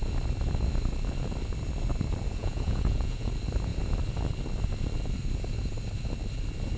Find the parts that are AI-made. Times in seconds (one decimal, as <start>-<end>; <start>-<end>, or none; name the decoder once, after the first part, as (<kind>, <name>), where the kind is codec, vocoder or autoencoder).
2.4-3.3 (vocoder, Vocos)